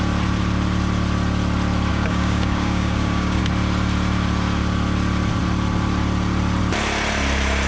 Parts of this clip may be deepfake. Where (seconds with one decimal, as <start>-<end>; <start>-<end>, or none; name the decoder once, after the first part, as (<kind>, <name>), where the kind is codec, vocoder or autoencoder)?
1.9-3.4 (codec, DAC)